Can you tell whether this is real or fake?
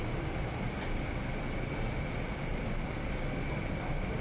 real